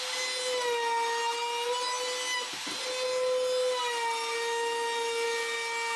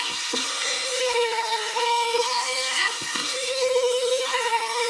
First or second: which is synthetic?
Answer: second